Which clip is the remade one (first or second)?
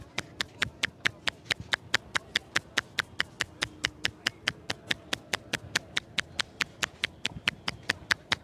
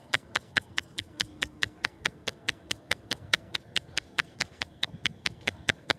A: second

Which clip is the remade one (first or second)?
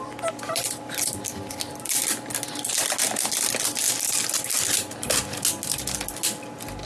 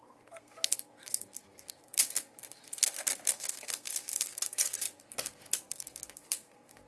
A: second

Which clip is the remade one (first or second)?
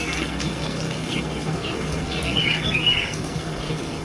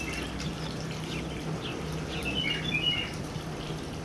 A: first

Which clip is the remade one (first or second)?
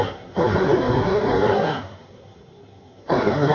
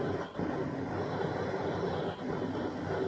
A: first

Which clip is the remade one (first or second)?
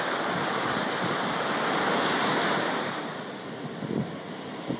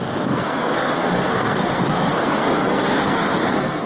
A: second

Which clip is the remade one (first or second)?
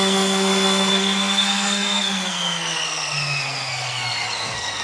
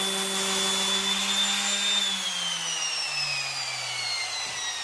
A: first